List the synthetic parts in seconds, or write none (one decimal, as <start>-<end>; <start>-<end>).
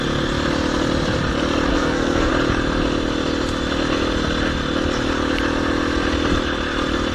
1.7-2.3